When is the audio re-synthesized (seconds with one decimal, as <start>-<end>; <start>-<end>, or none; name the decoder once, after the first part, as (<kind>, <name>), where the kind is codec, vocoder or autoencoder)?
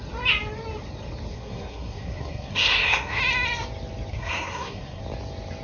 1.3-3.2 (codec, SNAC); 4.1-5.0